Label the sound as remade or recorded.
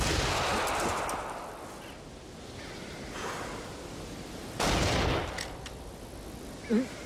recorded